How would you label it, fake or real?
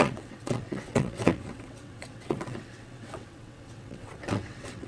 fake